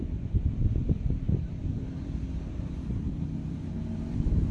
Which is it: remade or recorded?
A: remade